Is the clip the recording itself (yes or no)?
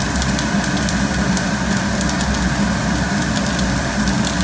yes